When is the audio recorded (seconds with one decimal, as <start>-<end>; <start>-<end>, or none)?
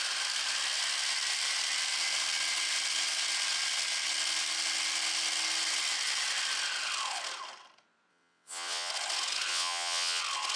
0.0-8.1; 8.9-9.5; 10.2-10.6